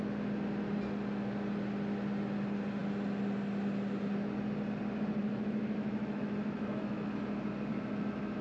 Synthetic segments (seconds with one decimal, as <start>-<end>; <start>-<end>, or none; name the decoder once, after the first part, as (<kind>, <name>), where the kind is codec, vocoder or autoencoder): 5.2-7.1 (autoencoder, DAC-VAE); 7.7-8.4